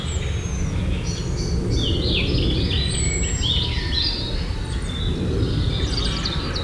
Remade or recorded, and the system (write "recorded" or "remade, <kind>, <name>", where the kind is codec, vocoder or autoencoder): recorded